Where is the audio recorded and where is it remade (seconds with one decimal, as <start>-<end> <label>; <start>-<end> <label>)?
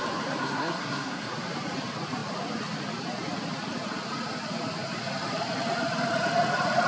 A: 0.0-0.4 recorded; 0.4-1.3 remade; 1.3-6.9 recorded